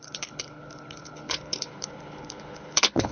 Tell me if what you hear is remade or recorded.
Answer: remade